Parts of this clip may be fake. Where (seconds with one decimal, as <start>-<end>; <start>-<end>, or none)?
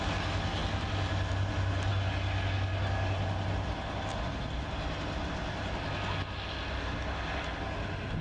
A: none